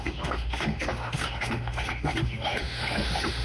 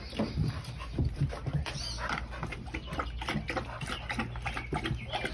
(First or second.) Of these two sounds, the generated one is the first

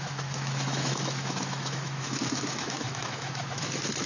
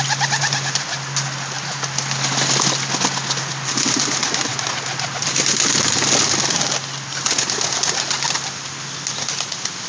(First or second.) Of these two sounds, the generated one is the first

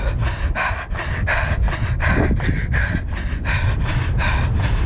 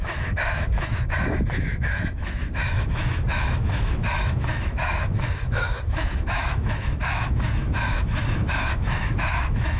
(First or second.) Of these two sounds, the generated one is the second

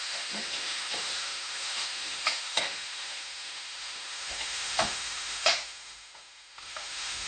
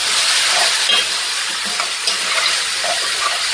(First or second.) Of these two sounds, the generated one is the first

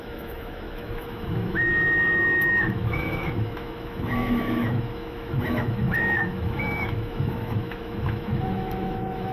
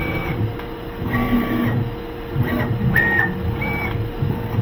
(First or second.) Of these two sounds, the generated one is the first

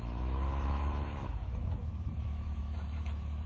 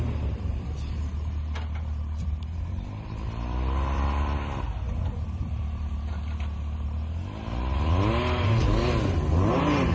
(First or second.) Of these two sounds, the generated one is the first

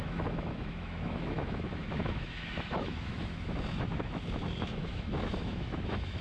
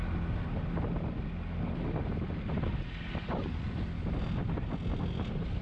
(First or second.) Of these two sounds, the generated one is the first